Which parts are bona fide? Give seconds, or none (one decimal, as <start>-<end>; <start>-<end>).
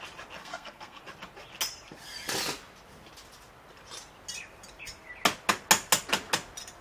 0.0-0.4; 1.0-6.8